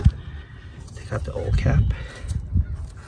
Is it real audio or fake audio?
real